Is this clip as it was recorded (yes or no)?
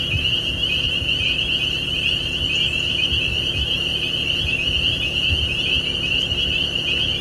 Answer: yes